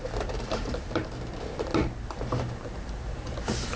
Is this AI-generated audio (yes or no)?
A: yes